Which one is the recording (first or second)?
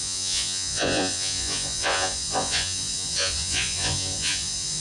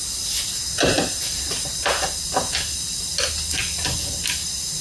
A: second